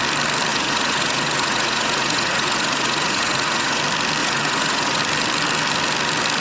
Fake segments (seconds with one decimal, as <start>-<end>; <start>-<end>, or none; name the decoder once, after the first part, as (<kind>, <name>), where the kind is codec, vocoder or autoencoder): 0.5-3.8 (vocoder, Vocos); 4.2-5.0